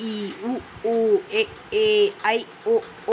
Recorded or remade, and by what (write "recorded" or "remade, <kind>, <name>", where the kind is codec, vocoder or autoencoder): recorded